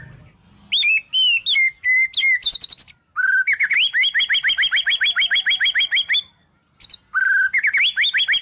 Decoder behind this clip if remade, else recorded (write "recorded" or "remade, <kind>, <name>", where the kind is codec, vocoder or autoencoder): recorded